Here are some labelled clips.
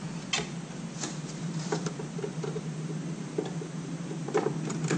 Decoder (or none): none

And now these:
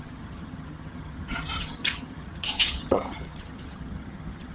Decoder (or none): vocoder, HiFi-GAN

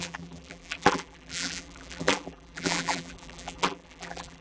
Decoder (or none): vocoder, BigVGAN v2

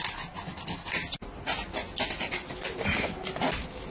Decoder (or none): none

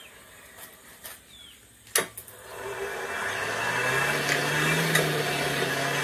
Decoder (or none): none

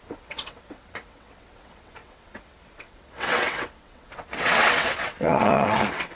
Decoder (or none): vocoder, WaveNeXt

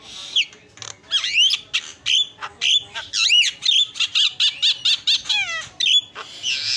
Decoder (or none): none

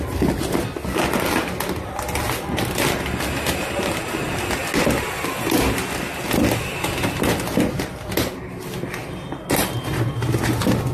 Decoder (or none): none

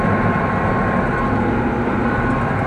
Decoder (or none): none